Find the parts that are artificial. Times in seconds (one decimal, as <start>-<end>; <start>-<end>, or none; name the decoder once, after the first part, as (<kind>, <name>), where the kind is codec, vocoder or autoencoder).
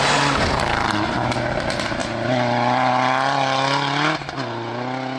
none